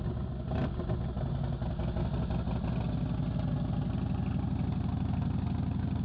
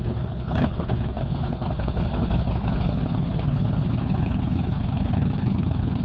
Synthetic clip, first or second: second